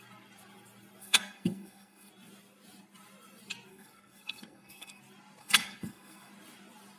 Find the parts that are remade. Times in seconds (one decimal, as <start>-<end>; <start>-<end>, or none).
1.0-2.1; 3.7-5.0; 5.4-6.3